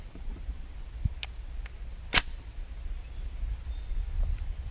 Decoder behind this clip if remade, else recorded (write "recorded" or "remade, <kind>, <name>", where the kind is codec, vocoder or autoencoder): recorded